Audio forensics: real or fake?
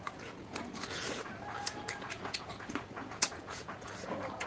fake